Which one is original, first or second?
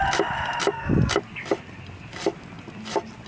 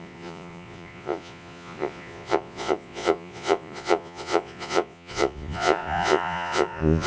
first